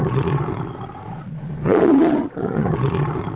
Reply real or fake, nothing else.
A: fake